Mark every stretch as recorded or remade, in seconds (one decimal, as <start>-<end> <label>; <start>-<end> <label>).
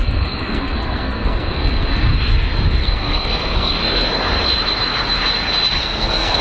0.0-2.1 remade; 2.1-2.8 recorded; 2.8-3.8 remade; 3.8-5.8 recorded; 5.8-6.4 remade